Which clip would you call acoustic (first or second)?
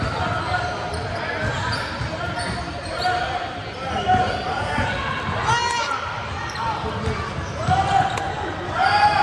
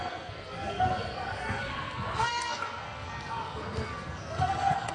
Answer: first